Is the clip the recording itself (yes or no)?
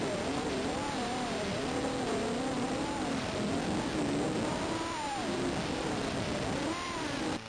yes